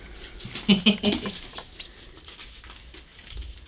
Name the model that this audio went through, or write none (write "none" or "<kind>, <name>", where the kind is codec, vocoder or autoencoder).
none